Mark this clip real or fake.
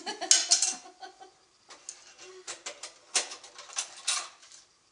real